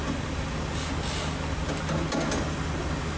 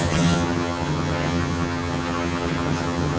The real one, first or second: first